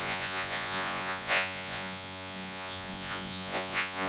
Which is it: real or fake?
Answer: fake